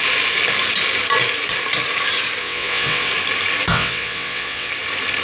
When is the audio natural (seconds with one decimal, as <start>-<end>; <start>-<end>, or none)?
0.0-2.4; 3.1-3.7; 4.7-5.2